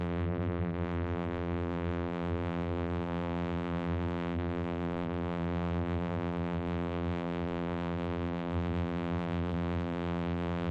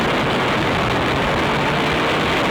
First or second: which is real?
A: second